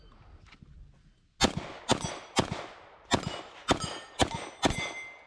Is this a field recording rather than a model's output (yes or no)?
yes